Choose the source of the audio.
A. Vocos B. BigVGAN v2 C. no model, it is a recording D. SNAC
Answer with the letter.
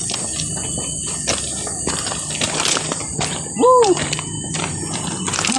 C